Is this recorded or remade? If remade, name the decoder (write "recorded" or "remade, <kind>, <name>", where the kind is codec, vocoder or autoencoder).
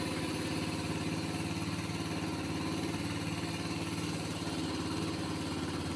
recorded